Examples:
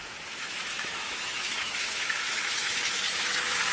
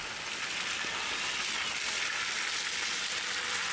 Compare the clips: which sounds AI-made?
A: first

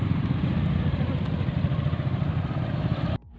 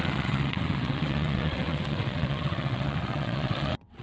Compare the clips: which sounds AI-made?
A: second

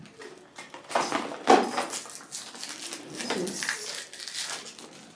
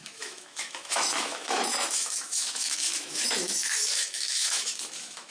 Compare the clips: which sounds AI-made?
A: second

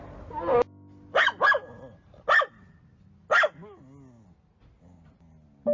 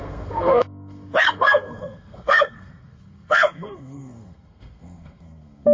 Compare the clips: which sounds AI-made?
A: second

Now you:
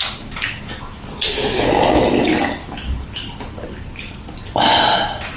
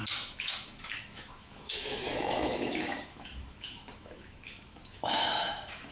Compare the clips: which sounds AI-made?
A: second